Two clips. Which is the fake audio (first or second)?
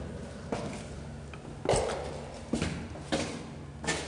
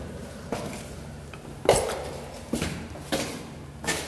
second